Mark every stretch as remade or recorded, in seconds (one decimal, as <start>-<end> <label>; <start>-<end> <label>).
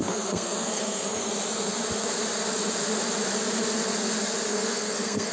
0.0-1.3 remade; 1.3-4.5 recorded; 4.5-5.3 remade